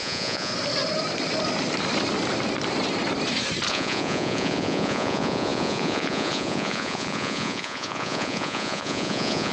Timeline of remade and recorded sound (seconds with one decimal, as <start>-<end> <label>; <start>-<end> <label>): 0.0-0.5 remade; 0.5-3.7 recorded; 3.7-9.5 remade